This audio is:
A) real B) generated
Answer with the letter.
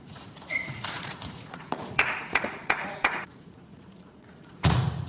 B